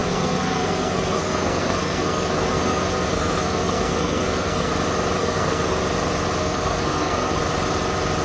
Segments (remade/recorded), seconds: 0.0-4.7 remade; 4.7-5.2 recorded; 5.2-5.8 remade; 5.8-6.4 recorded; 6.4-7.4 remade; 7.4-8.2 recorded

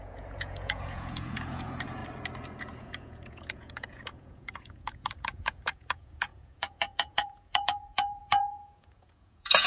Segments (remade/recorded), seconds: 0.0-2.0 remade; 2.0-2.8 recorded; 2.8-9.7 remade

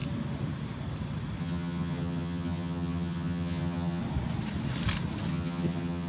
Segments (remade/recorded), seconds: 0.0-1.4 recorded; 1.4-4.0 remade; 4.0-5.3 recorded; 5.3-6.1 remade

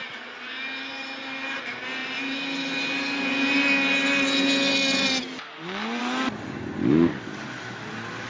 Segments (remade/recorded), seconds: 0.0-8.3 recorded

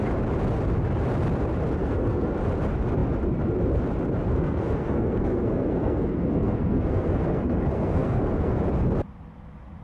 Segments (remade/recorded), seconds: 0.0-1.8 recorded; 1.8-2.3 remade; 2.3-4.3 recorded; 4.3-8.6 remade; 8.6-9.8 recorded

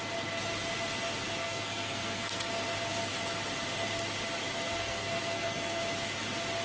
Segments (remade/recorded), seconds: 0.0-1.4 recorded; 1.4-2.5 remade; 2.5-4.8 recorded; 4.8-5.8 remade; 5.8-6.6 recorded

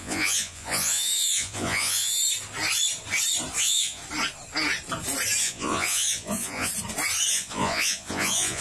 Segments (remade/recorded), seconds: 0.0-2.2 remade; 2.2-3.6 recorded; 3.6-4.0 remade; 4.0-5.4 recorded; 5.4-6.7 remade; 6.7-7.3 recorded; 7.3-8.6 remade